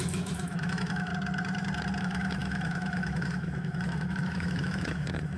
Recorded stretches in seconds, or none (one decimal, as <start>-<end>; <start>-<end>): 1.1-2.0